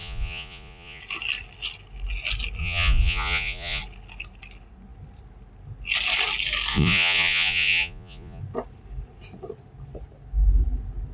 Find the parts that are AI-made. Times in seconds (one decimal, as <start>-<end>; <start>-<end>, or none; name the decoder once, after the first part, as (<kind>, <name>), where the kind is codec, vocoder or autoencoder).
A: 0.0-1.0 (vocoder, Vocos); 2.6-3.8; 6.7-8.4